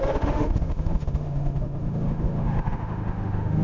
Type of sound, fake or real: fake